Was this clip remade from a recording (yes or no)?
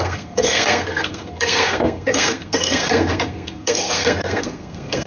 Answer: yes